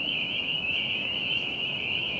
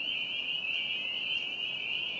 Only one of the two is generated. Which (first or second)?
first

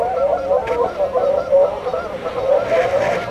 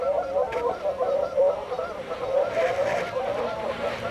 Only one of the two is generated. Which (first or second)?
second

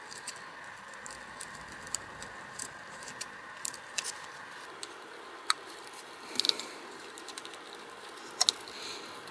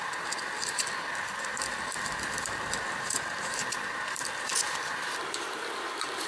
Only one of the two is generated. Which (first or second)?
second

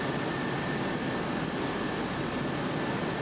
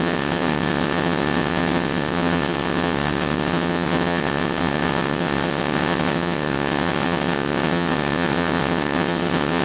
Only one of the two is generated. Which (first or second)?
second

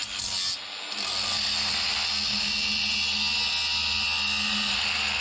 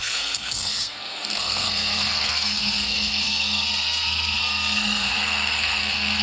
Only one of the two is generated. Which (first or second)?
second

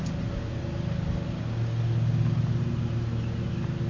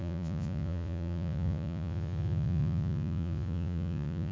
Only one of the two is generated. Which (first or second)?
second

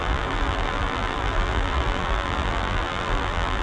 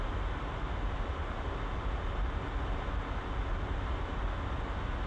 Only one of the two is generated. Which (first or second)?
first